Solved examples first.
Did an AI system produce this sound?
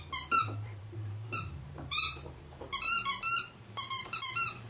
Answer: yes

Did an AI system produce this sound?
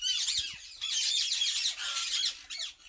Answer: no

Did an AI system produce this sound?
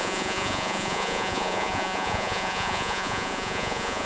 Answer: yes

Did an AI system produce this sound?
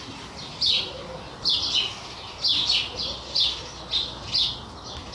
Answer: no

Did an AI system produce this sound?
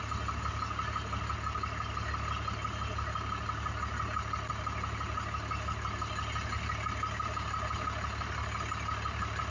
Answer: no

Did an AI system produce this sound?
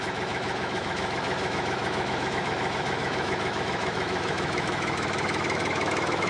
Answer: yes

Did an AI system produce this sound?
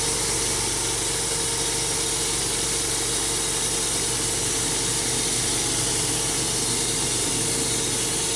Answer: no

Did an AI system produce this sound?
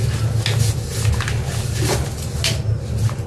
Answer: no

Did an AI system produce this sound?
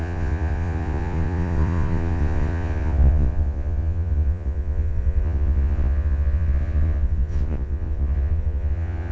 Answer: yes